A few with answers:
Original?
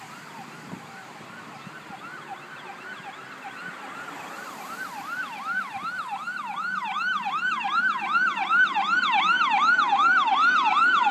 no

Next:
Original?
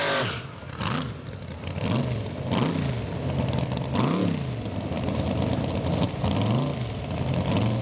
yes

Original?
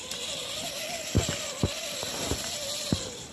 yes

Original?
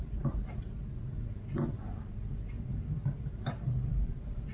yes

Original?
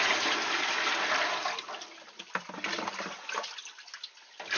yes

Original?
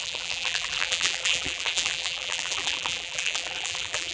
no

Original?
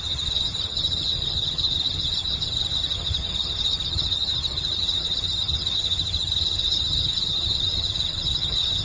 no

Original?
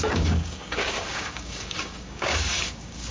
no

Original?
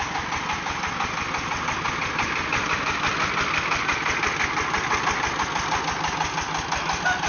yes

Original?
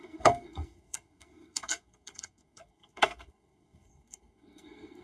no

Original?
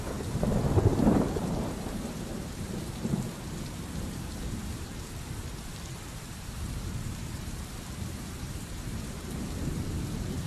no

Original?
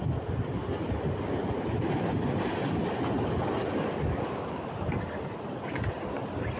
yes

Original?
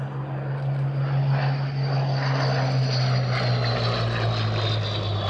yes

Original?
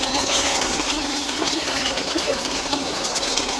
no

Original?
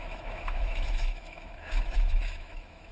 no